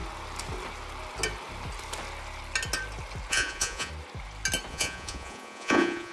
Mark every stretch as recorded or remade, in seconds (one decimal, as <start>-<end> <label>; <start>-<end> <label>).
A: 0.0-3.3 recorded; 3.3-3.9 remade; 3.9-4.7 recorded; 4.7-6.1 remade

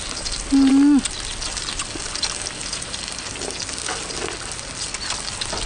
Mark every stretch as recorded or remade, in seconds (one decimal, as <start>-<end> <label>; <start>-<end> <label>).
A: 0.0-5.7 recorded

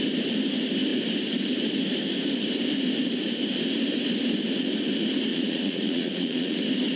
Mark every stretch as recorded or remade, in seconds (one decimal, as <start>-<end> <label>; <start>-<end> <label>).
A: 0.0-5.3 recorded; 5.3-6.6 remade; 6.6-7.0 recorded

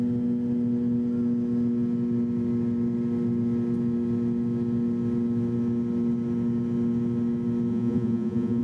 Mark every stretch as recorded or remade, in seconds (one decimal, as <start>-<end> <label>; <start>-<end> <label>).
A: 0.0-7.7 recorded; 7.7-8.6 remade